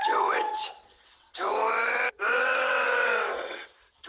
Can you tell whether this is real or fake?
fake